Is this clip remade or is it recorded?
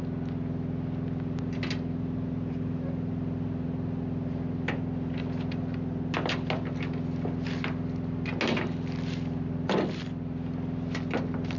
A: recorded